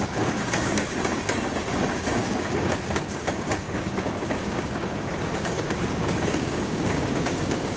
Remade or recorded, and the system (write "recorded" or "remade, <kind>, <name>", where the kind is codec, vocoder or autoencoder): remade, codec, DAC